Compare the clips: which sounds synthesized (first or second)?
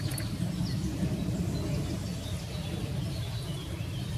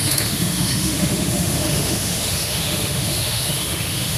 second